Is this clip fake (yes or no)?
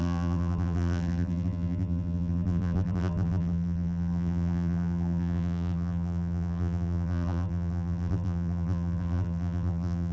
yes